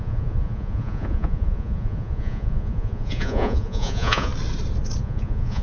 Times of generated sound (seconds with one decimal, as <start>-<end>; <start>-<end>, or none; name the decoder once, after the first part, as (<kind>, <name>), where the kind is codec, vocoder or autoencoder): 0.0-4.3 (vocoder, Vocos); 5.0-5.6